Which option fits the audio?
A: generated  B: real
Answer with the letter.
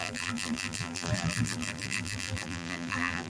A